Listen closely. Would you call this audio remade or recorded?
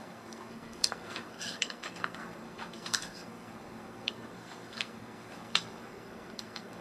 remade